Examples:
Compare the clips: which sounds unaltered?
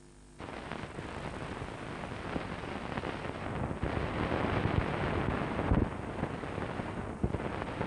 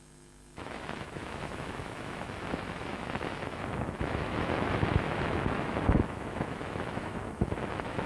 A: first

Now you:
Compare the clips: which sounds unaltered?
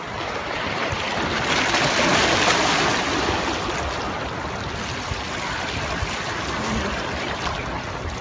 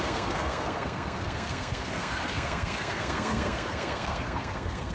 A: first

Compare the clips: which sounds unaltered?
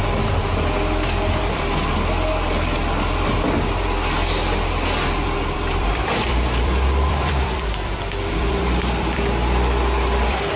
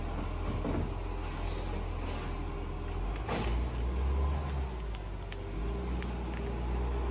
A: second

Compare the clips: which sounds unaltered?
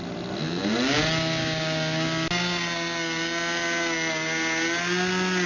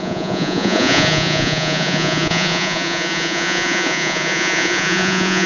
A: first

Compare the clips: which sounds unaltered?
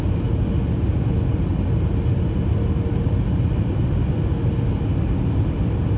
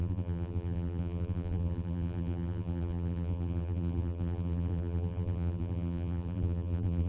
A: first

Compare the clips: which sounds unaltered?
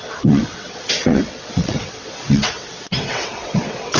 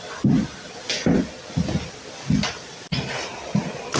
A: second